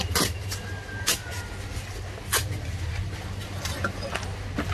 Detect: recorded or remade recorded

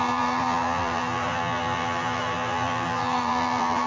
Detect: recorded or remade remade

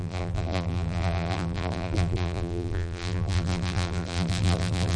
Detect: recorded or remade remade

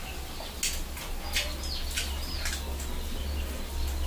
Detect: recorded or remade recorded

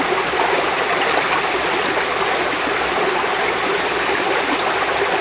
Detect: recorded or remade recorded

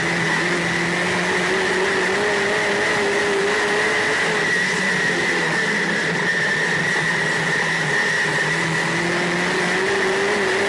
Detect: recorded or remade recorded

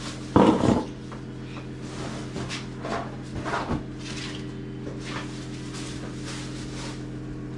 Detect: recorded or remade recorded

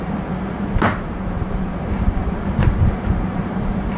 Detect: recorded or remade remade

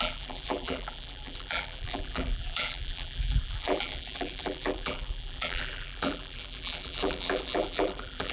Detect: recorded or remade remade